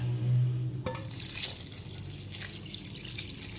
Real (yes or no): yes